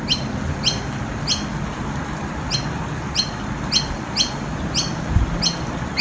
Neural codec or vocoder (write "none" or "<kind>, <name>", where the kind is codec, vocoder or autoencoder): none